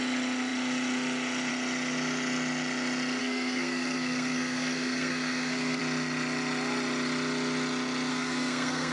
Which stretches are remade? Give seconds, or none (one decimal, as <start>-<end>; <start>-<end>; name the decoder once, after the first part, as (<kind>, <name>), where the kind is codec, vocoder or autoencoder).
3.2-5.8 (codec, SNAC); 8.1-8.9